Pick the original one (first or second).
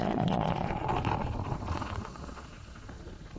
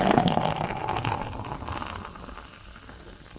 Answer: second